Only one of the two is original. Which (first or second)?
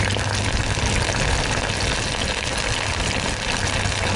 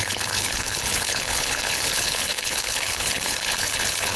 first